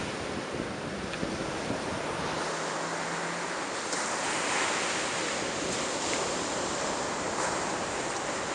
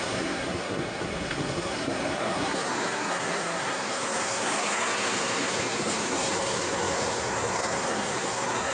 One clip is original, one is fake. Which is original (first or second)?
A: first